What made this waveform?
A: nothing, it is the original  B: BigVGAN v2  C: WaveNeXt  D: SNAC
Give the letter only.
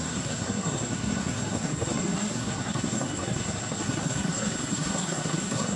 D